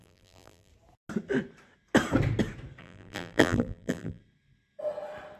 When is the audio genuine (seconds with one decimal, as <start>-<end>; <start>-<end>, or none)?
0.7-2.8; 4.2-5.4